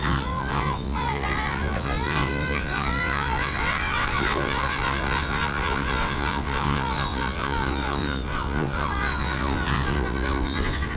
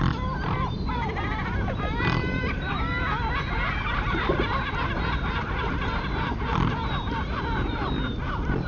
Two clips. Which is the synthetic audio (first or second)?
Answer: first